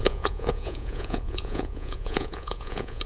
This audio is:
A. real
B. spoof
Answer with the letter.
B